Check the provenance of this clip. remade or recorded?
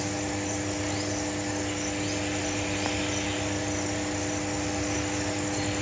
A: recorded